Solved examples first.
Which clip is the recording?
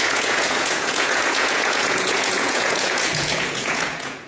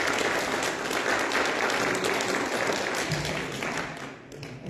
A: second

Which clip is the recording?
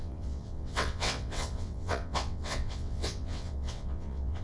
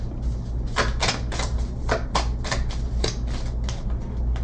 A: second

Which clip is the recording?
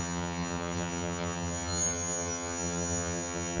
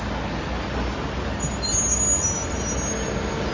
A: second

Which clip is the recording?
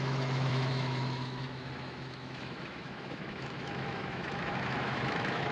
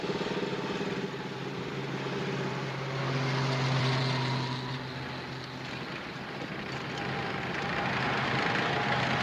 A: second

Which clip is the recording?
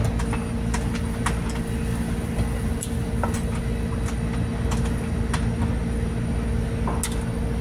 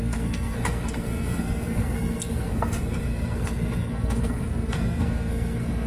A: first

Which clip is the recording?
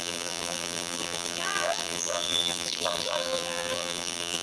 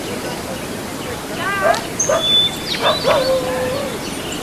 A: second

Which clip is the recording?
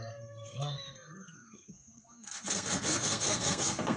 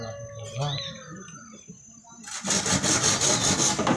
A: second